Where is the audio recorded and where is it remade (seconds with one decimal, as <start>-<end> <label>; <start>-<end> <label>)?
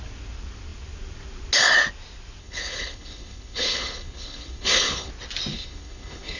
0.0-2.4 recorded; 2.4-5.1 remade; 5.1-5.5 recorded; 5.5-6.4 remade